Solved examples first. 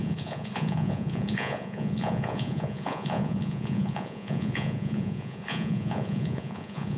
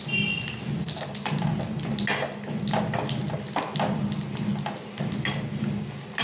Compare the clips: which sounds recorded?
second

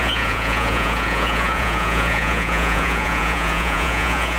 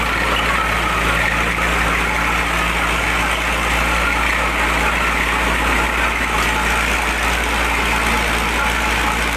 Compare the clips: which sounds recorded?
second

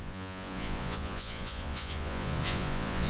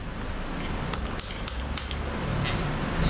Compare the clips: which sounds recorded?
second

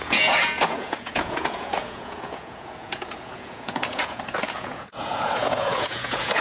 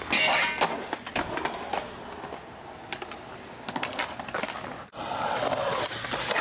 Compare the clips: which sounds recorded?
second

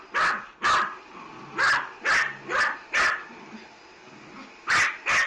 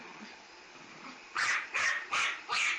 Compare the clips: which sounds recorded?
first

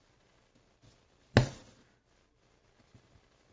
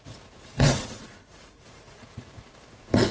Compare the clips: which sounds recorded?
first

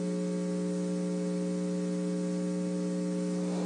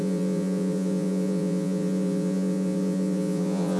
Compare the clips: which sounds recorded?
first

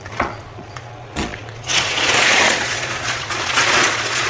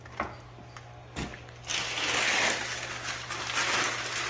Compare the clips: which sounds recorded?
second